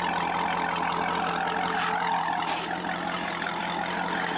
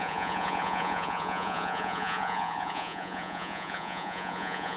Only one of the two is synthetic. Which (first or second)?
second